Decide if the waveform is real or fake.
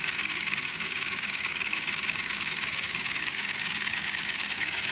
fake